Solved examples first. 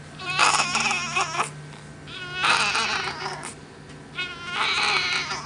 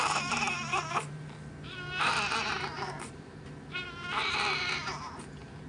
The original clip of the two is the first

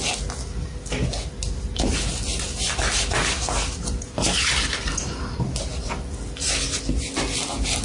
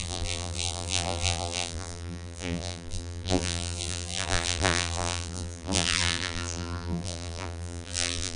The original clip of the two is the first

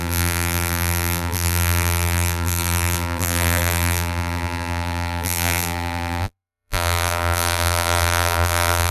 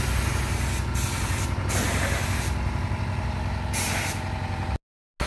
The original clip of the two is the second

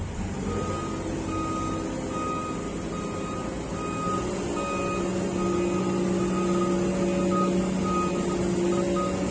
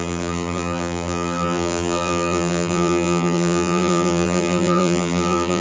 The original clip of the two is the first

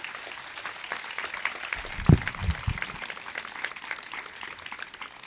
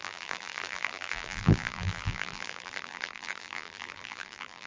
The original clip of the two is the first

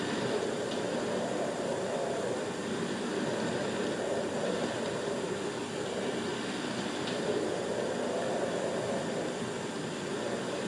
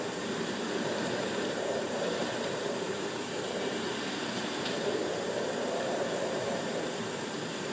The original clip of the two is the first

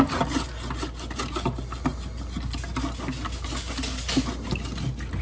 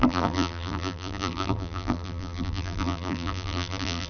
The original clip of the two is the first